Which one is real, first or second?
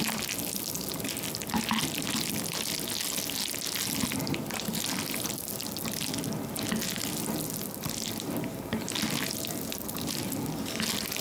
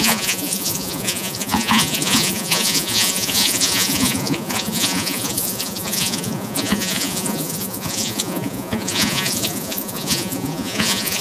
first